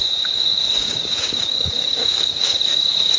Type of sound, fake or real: fake